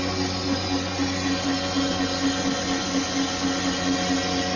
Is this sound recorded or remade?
recorded